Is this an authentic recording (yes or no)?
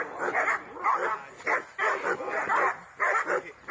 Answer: yes